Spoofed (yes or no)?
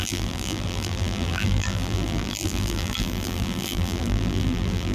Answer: yes